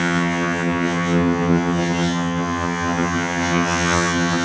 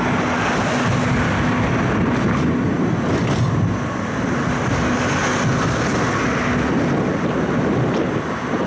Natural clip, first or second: second